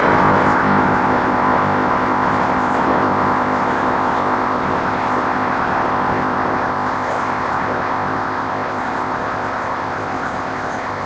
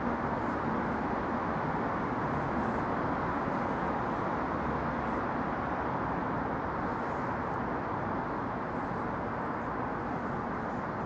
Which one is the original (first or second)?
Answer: second